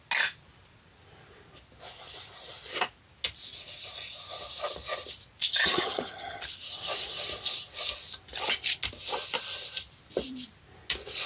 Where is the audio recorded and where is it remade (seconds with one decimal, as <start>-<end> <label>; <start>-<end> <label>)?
0.0-5.5 recorded; 5.5-6.4 remade; 6.4-11.3 recorded